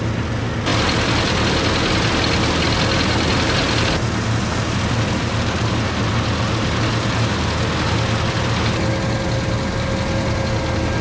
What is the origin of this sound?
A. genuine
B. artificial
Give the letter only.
A